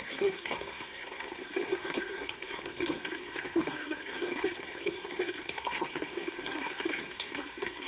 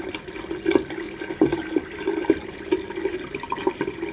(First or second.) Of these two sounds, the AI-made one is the first